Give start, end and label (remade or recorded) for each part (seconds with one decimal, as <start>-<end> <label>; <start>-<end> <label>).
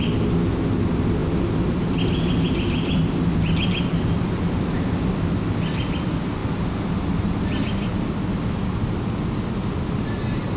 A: 0.0-10.6 recorded